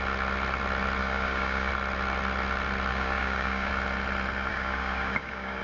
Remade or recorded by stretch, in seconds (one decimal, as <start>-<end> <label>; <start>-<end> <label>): 0.0-1.0 recorded; 1.0-1.7 remade; 1.7-2.9 recorded; 2.9-3.7 remade; 3.7-4.5 recorded; 4.5-5.6 remade